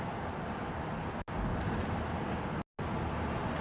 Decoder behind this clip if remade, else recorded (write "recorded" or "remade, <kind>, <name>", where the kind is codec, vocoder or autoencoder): recorded